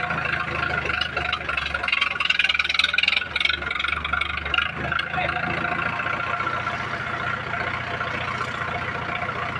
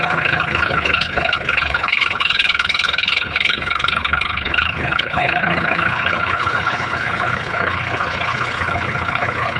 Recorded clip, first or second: first